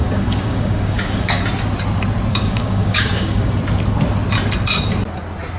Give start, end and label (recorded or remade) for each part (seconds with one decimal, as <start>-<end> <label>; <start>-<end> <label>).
0.0-1.4 remade; 1.4-2.3 recorded; 2.3-3.6 remade; 3.6-5.6 recorded